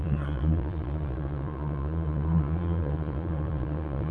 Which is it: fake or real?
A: fake